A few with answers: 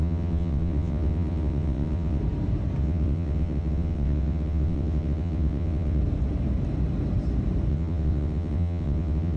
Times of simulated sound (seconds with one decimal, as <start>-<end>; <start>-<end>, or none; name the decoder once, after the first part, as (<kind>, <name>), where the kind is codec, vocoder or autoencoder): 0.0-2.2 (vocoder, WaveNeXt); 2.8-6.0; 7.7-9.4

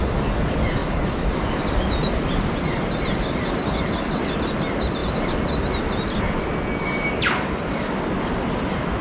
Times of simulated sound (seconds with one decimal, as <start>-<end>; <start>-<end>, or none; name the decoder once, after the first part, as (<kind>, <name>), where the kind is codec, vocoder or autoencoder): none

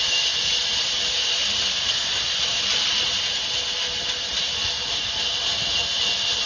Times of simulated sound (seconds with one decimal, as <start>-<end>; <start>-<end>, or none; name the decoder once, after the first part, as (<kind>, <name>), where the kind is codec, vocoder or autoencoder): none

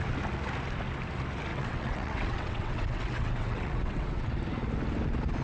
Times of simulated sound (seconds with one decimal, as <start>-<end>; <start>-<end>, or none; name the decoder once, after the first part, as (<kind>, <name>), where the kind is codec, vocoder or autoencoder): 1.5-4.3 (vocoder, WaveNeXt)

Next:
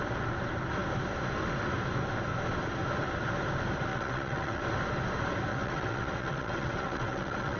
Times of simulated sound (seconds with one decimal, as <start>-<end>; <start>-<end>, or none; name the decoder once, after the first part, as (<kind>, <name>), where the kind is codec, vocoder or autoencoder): 3.9-4.6 (vocoder, WaveNeXt); 5.5-7.6

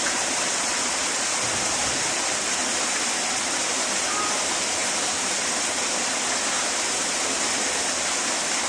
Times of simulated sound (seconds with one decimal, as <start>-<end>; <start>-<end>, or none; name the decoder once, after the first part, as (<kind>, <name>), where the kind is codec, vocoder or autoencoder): none

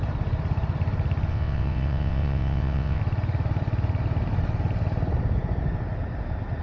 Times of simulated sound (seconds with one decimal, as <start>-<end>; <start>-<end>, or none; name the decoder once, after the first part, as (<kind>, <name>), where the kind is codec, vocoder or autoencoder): 1.3-3.0 (vocoder, WaveNeXt)